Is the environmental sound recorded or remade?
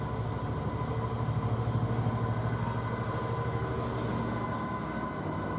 recorded